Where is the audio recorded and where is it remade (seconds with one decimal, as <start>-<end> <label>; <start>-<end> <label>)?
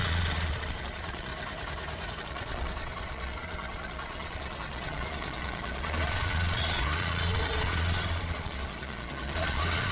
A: 0.0-1.3 remade; 1.3-2.2 recorded; 2.2-9.9 remade